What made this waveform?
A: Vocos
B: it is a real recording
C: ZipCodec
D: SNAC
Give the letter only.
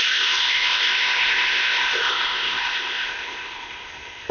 C